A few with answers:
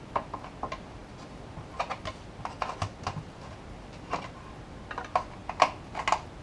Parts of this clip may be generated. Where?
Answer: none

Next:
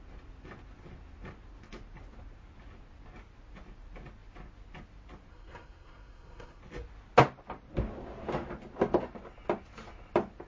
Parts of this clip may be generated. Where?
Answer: 5.3-6.6 (codec, SNAC)

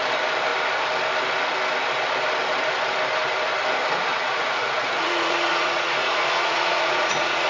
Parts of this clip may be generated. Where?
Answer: 4.1-7.5 (vocoder, Vocos)

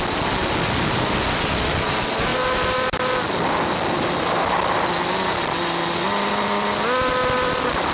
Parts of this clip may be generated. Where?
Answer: none

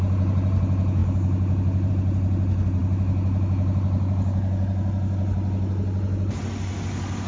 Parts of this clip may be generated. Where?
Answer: none

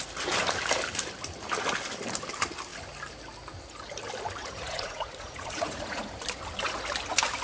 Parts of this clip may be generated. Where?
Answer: 4.4-6.2 (vocoder, Vocos)